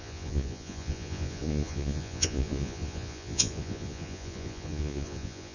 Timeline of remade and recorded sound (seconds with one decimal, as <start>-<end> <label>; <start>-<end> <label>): 0.0-5.5 remade

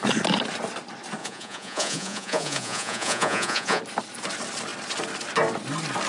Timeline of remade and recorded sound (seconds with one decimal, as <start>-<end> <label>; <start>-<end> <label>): 0.0-1.2 recorded; 1.2-3.8 remade; 3.8-6.1 recorded

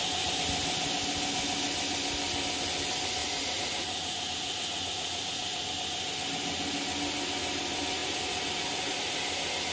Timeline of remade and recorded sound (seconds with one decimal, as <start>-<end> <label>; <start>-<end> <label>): 0.0-3.2 recorded; 3.2-5.7 remade; 5.7-9.7 recorded

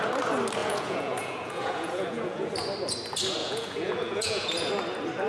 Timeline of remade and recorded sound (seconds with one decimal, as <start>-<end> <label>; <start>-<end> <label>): 0.0-0.6 recorded; 0.6-2.5 remade; 2.5-3.4 recorded; 3.4-4.7 remade; 4.7-5.3 recorded

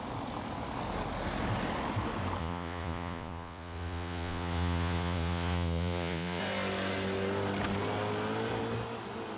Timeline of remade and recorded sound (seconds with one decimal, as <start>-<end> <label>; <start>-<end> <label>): 0.0-2.4 recorded; 2.4-6.4 remade; 6.4-9.4 recorded

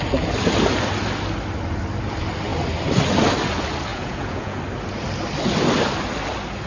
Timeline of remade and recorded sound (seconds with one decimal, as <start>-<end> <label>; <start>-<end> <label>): 0.0-3.9 recorded; 3.9-4.6 remade; 4.6-6.7 recorded

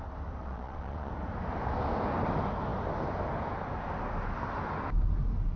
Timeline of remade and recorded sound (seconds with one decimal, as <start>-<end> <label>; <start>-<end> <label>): 0.0-0.4 recorded; 0.4-1.1 remade; 1.1-5.6 recorded

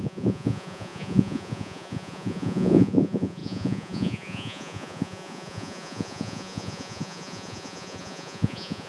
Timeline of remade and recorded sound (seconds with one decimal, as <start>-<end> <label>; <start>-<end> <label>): 0.0-8.9 remade